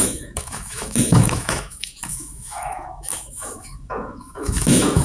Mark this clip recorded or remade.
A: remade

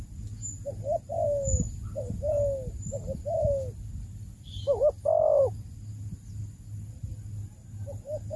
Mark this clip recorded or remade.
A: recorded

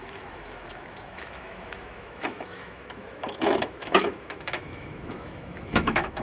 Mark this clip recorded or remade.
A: remade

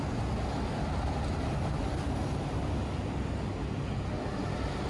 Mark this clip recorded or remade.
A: recorded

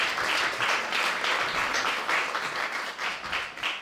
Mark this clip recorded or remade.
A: recorded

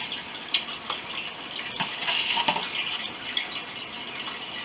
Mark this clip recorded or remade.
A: recorded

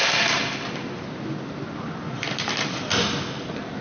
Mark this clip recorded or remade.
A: recorded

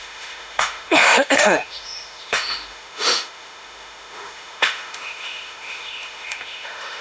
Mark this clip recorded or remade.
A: remade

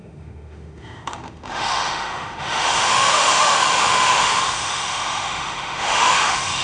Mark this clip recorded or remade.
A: remade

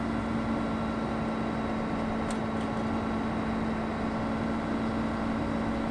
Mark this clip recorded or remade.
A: recorded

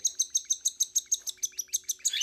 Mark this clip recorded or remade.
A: recorded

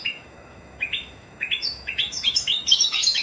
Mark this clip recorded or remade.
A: remade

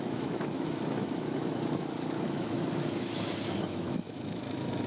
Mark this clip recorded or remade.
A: remade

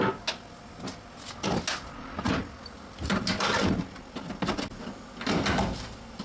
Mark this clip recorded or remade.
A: recorded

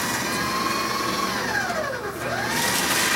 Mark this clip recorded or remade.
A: recorded